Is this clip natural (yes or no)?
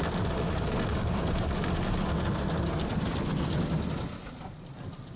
yes